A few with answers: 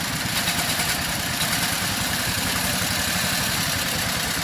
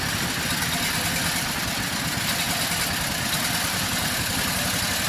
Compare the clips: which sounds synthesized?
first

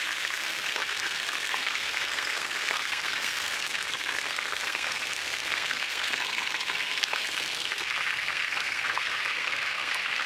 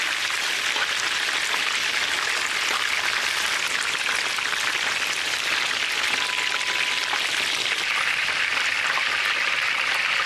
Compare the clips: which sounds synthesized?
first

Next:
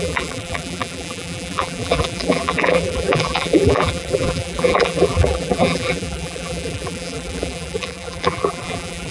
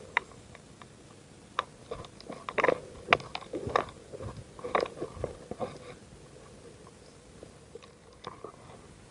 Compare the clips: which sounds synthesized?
first